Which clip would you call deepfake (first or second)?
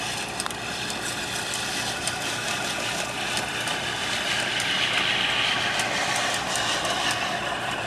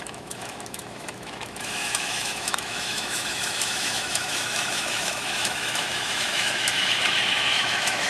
second